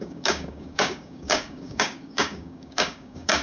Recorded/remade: remade